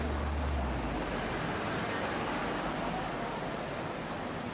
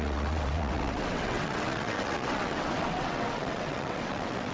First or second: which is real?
first